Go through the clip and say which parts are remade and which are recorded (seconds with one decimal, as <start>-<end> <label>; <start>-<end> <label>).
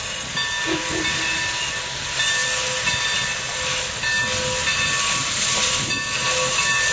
0.0-6.9 recorded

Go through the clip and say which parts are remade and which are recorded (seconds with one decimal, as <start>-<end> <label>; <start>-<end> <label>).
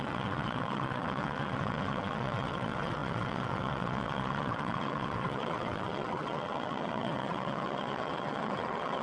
0.0-9.0 remade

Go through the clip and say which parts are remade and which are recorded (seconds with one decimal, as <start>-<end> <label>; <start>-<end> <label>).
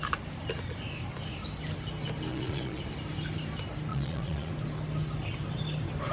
0.0-2.3 recorded; 2.3-2.8 remade; 2.8-3.9 recorded; 3.9-4.5 remade; 4.5-6.1 recorded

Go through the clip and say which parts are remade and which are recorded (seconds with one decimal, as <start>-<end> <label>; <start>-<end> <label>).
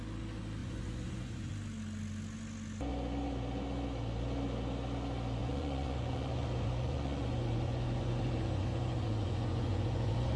0.0-0.6 recorded; 0.6-1.5 remade; 1.5-5.4 recorded; 5.4-10.4 remade